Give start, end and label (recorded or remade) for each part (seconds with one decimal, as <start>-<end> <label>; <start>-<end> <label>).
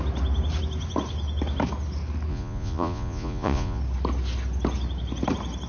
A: 0.0-2.3 recorded; 2.3-3.8 remade; 3.8-5.7 recorded